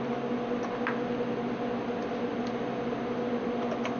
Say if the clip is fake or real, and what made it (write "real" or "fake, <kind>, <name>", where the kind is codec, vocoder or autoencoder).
real